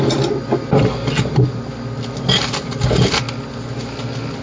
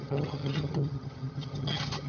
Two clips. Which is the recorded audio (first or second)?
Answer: first